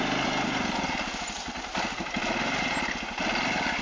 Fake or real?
real